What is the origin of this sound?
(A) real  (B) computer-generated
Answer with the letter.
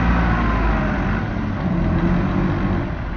A